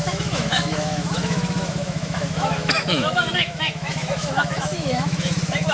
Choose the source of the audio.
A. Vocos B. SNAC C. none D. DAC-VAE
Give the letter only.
D